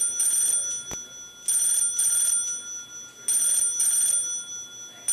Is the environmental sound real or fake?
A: real